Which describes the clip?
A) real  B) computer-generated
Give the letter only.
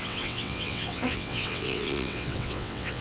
B